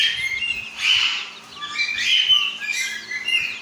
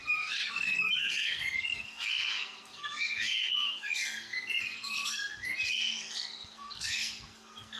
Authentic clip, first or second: first